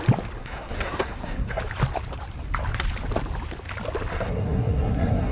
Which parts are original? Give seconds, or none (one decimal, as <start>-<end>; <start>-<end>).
0.0-0.4; 1.6-4.1